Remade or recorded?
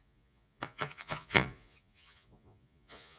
remade